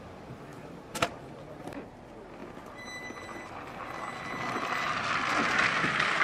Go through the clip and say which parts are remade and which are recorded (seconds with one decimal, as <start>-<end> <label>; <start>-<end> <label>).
0.0-2.4 remade; 2.4-6.2 recorded